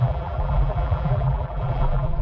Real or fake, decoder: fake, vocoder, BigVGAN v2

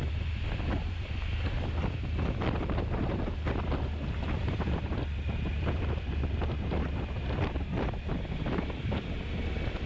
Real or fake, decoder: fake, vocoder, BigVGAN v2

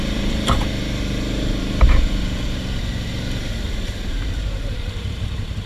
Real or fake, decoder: fake, vocoder, BigVGAN v2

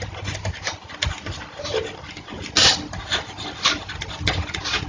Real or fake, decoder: real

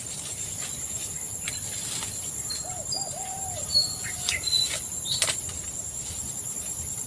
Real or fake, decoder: fake, vocoder, BigVGAN v2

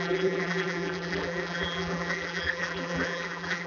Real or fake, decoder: fake, vocoder, BigVGAN v2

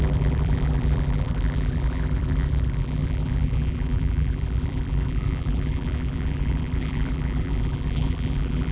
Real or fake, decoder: fake, vocoder, BigVGAN v2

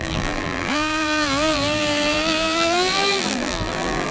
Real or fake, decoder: fake, vocoder, BigVGAN v2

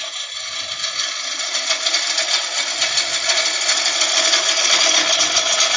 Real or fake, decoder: real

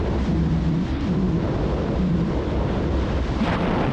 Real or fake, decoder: fake, vocoder, BigVGAN v2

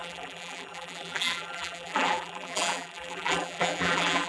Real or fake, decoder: fake, vocoder, BigVGAN v2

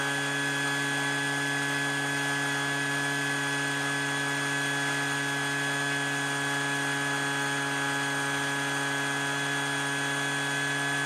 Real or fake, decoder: real